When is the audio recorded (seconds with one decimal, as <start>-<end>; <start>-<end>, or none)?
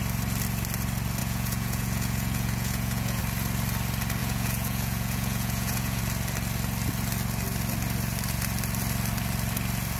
0.0-1.2; 3.2-4.2; 6.0-10.0